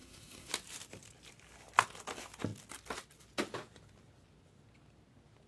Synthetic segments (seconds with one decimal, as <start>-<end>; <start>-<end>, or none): 0.0-0.5